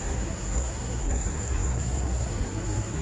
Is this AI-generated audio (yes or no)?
yes